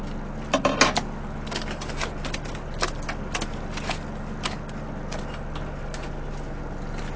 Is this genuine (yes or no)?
yes